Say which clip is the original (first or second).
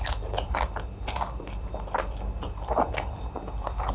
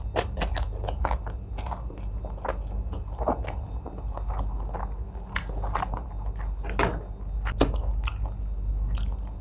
second